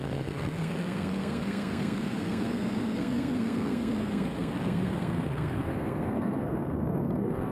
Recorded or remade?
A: remade